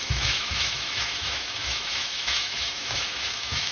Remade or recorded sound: remade